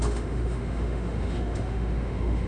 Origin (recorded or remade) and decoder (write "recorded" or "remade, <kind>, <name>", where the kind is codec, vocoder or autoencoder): remade, autoencoder, DAC-VAE